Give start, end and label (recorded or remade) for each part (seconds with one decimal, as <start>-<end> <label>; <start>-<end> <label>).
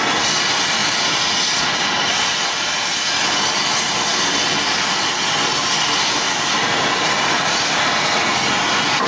0.0-9.1 recorded